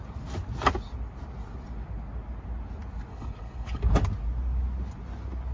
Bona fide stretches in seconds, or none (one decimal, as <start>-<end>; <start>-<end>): 0.0-3.1; 3.8-5.5